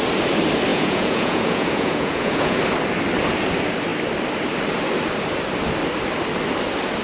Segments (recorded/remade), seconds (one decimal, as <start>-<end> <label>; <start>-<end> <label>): 0.0-0.7 recorded; 0.7-2.6 remade; 2.6-7.0 recorded